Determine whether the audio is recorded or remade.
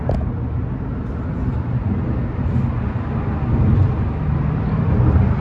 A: recorded